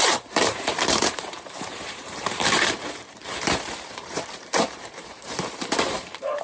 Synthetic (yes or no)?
yes